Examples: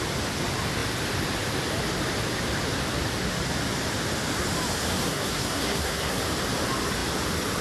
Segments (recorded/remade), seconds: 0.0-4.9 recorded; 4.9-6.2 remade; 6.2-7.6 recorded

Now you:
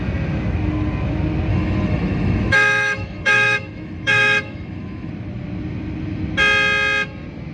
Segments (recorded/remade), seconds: 0.0-1.5 recorded; 1.5-5.1 remade; 5.1-7.5 recorded

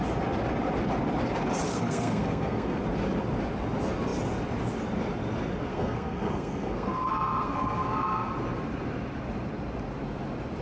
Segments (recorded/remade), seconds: 0.0-1.7 recorded; 1.7-2.8 remade; 2.8-5.7 recorded; 5.7-8.3 remade; 8.3-10.6 recorded

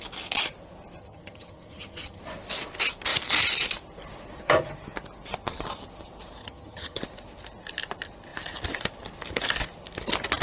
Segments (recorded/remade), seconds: 0.0-1.0 recorded; 1.0-2.2 remade; 2.2-6.4 recorded; 6.4-7.0 remade; 7.0-10.4 recorded

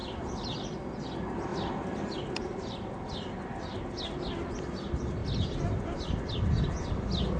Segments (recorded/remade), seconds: 0.0-7.4 recorded

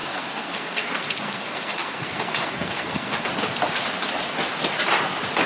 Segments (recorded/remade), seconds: 0.0-3.3 remade; 3.3-5.5 recorded

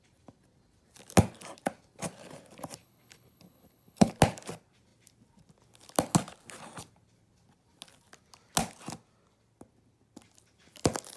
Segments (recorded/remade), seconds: 0.0-2.8 recorded; 2.8-4.1 remade; 4.1-11.2 recorded

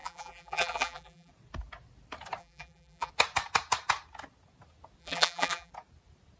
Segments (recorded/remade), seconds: 0.0-1.3 remade; 1.3-2.4 recorded; 2.4-3.1 remade; 3.1-5.0 recorded; 5.0-5.7 remade; 5.7-6.4 recorded